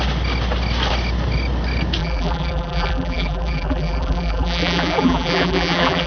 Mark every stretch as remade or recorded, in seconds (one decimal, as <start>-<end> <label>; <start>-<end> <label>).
0.0-2.0 recorded; 2.0-6.1 remade